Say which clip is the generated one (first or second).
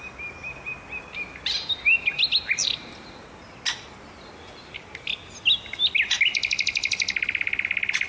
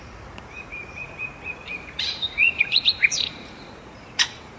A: second